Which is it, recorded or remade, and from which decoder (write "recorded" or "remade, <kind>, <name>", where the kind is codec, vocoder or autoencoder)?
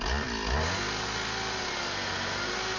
recorded